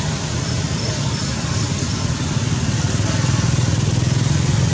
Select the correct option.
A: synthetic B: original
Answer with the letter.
B